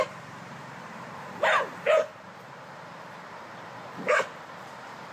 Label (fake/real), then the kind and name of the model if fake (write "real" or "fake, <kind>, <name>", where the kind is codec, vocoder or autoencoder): fake, vocoder, BigVGAN v2